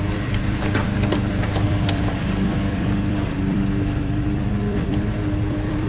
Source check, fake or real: fake